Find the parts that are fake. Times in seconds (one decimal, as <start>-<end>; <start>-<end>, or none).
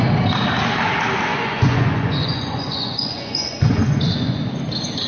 1.3-4.4